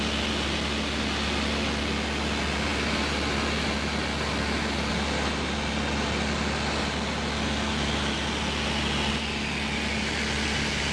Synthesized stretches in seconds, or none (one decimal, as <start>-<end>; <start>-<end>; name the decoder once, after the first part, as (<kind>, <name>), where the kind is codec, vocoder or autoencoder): none